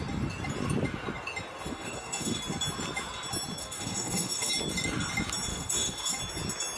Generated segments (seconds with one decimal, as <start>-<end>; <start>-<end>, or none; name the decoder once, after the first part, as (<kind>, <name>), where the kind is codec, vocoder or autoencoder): 1.7-2.4 (codec, DAC); 3.6-4.5; 5.5-6.2